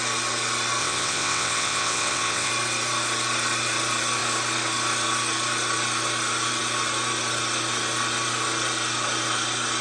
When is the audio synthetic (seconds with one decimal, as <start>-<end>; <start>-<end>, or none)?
0.8-2.5